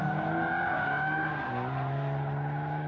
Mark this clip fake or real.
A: real